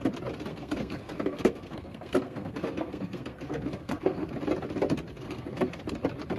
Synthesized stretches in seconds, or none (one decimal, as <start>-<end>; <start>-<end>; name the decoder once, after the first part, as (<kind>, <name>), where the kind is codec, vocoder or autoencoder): 0.5-4.3 (codec, SNAC); 5.2-5.8